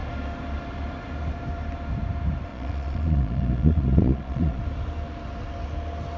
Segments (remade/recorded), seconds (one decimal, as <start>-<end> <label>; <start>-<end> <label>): 0.0-2.5 recorded; 2.5-4.6 remade; 4.6-6.2 recorded